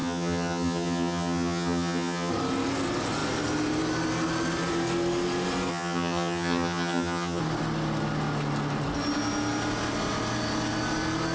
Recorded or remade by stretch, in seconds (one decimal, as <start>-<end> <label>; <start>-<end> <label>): 0.0-2.3 remade; 2.3-5.7 recorded; 5.7-7.4 remade; 7.4-11.3 recorded